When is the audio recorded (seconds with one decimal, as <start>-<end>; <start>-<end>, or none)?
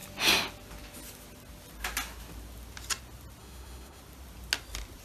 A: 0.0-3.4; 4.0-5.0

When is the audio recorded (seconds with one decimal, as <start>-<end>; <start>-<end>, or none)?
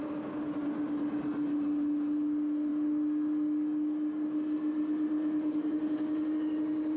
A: 0.0-7.0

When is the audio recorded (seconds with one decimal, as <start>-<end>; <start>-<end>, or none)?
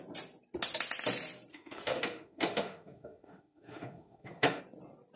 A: 0.0-1.5; 4.6-5.2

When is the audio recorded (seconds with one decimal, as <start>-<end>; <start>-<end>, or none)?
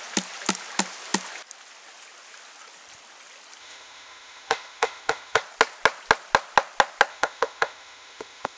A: 0.0-3.6; 5.4-7.1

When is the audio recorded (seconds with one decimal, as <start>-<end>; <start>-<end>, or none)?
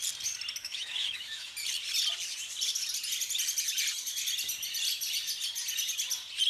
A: 0.0-0.6; 1.5-6.5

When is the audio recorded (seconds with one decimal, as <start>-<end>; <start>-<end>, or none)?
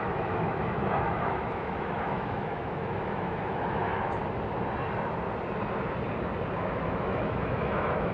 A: 4.2-6.6